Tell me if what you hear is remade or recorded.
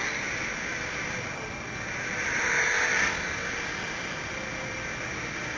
recorded